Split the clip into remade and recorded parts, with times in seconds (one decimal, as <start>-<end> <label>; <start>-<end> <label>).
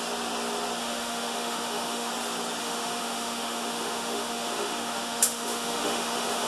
0.0-0.8 recorded; 0.8-2.1 remade; 2.1-2.6 recorded; 2.6-6.5 remade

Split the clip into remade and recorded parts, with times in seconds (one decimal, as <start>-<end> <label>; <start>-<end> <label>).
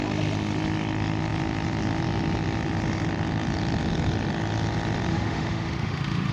0.0-5.1 recorded; 5.1-6.3 remade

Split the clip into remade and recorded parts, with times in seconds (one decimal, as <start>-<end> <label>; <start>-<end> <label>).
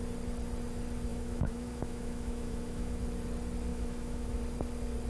0.0-1.1 recorded; 1.1-3.0 remade; 3.0-3.7 recorded; 3.7-4.4 remade; 4.4-5.1 recorded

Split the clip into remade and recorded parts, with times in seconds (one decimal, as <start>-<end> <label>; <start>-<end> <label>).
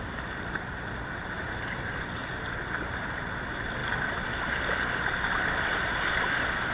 0.0-6.7 recorded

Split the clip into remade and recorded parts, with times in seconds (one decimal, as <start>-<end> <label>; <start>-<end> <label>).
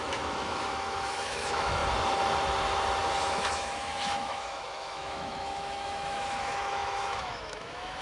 0.0-1.8 remade; 1.8-3.2 recorded; 3.2-8.0 remade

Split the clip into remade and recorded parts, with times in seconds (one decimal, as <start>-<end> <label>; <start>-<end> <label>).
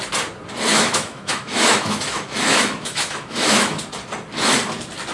0.0-0.7 recorded; 0.7-3.8 remade; 3.8-5.1 recorded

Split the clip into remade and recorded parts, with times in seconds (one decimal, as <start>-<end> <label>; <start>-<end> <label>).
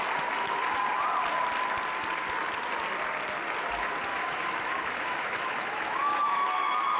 0.0-4.1 recorded; 4.1-7.0 remade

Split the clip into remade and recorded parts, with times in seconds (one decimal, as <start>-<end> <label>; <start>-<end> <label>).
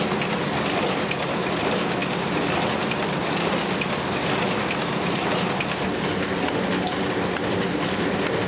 0.0-8.5 recorded